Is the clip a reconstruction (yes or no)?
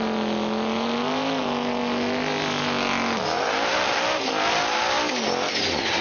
no